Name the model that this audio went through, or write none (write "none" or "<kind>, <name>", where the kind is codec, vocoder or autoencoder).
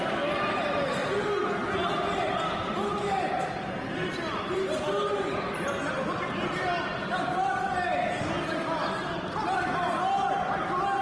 none